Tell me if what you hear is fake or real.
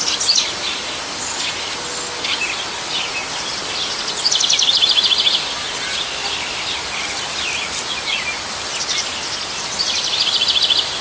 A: real